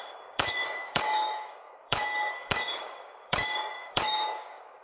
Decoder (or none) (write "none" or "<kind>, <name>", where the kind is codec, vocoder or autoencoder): codec, DAC